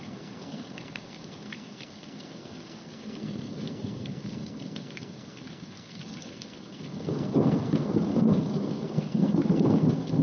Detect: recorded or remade remade